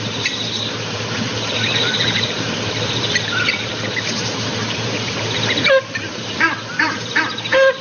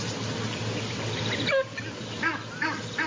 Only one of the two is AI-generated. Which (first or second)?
first